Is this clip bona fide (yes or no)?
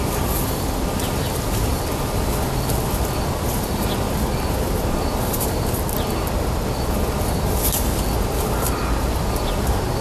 yes